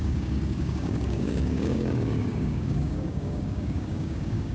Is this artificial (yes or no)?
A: yes